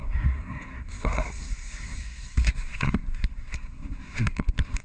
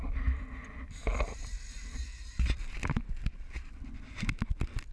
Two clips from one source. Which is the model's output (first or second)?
first